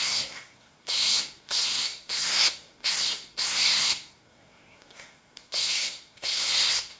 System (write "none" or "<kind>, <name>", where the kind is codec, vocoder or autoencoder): codec, SNAC